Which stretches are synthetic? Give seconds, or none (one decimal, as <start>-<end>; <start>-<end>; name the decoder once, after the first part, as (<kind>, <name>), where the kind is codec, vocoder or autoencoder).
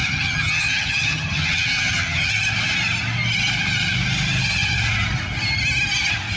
0.0-2.3 (vocoder, HiFi-GAN)